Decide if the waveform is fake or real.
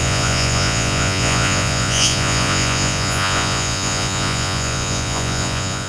fake